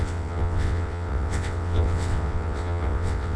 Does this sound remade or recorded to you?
remade